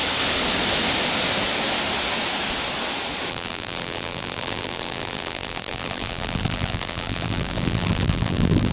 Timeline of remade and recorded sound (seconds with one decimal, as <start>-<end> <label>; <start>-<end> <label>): 0.0-3.3 recorded; 3.3-8.7 remade